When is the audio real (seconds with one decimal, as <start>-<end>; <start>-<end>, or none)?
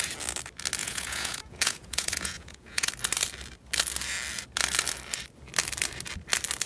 0.0-0.8; 2.9-6.7